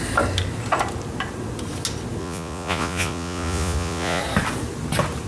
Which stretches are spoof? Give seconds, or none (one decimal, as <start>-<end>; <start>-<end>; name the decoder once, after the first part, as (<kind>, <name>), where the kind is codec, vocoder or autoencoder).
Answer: 2.2-4.2 (vocoder, Vocos)